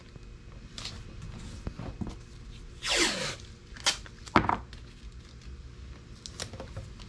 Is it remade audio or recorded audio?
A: recorded